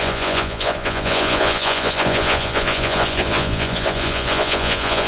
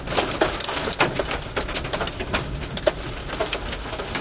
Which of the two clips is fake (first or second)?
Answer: first